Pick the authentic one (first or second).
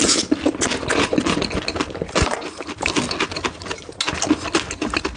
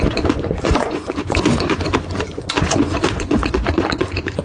first